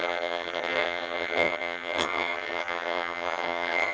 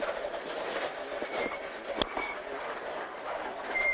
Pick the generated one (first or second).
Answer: first